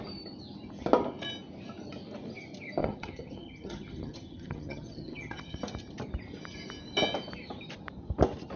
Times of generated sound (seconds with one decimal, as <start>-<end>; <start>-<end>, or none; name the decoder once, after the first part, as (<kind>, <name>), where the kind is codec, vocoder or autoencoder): 2.8-5.6 (vocoder, HiFi-GAN)

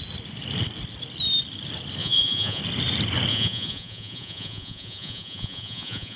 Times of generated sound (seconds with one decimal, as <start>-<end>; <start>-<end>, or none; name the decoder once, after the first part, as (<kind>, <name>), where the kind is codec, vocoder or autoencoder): 2.0-2.6 (vocoder, Vocos); 3.3-6.2

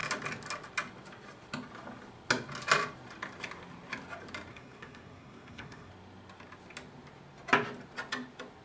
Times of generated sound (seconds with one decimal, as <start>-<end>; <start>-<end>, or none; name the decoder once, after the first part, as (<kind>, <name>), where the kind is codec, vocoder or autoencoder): 4.5-5.9 (codec, SNAC)

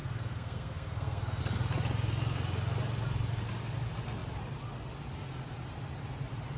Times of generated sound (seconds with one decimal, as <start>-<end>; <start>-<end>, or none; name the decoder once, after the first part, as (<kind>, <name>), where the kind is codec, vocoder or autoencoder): 0.0-1.4 (codec, SNAC)

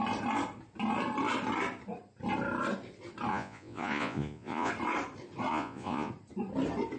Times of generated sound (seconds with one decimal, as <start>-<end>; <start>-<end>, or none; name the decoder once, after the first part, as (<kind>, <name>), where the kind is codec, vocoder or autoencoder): 3.3-4.7 (vocoder, Vocos); 5.5-6.1